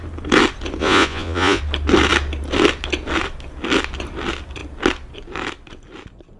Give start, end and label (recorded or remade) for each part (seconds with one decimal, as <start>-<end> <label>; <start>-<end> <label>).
0.0-0.8 recorded; 0.8-1.6 remade; 1.6-6.4 recorded